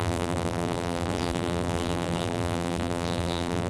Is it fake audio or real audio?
fake